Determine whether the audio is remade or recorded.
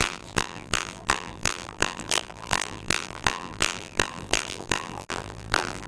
remade